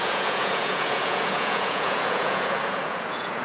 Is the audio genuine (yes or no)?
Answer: no